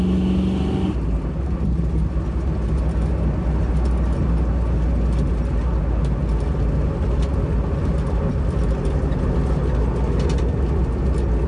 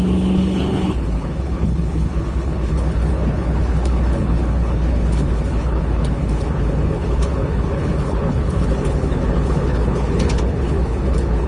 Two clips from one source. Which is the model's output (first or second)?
second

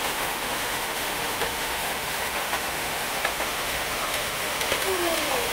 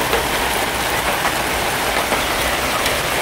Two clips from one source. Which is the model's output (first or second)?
first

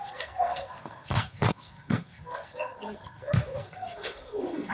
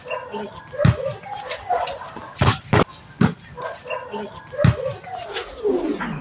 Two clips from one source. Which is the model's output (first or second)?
first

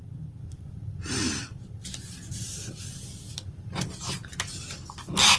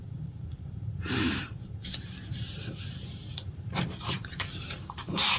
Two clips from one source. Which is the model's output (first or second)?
second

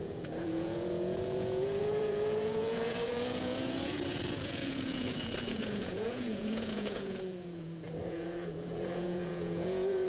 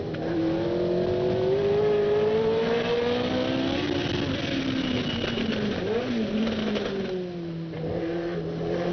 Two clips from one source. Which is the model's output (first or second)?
first